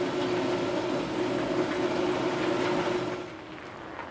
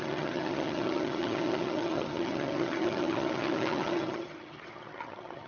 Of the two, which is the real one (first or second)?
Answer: first